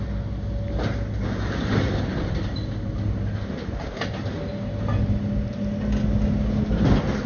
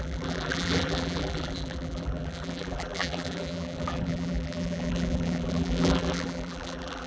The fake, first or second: second